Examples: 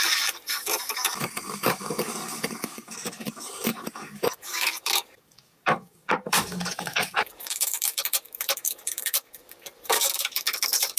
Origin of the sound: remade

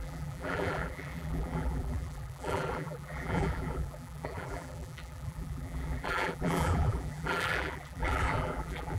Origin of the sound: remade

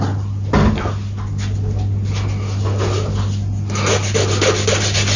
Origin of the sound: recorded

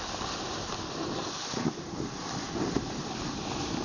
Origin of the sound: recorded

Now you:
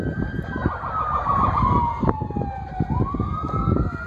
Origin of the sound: recorded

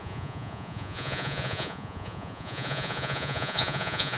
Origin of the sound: remade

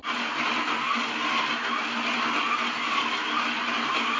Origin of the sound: recorded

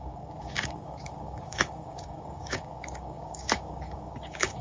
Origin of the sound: remade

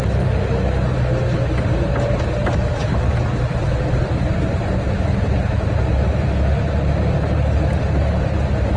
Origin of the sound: recorded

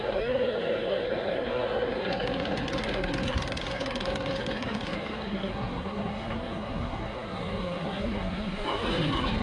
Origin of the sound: remade